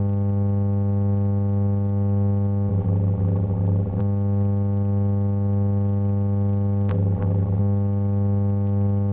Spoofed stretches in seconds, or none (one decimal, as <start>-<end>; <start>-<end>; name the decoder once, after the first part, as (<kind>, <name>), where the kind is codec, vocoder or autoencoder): 2.7-4.0 (vocoder, BigVGAN v2); 6.9-7.6